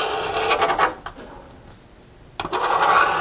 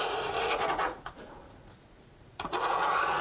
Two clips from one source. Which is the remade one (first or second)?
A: second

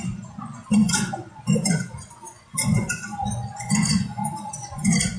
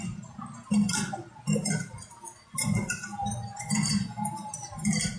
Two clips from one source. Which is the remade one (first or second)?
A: first